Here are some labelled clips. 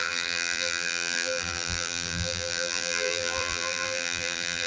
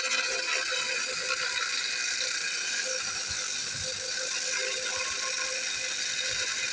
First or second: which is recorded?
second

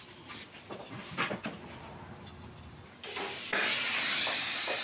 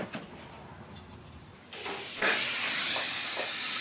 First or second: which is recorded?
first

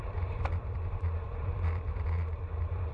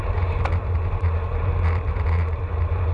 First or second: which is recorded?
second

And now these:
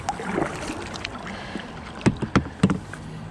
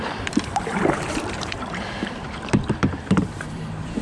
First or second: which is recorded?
first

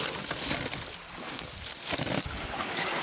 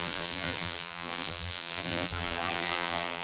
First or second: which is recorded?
first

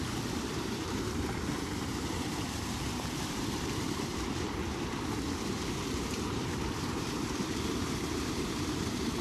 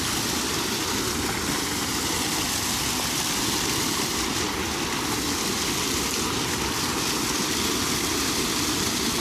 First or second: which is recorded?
second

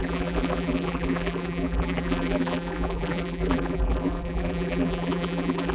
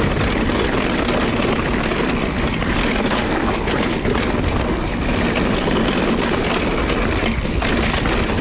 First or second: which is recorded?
second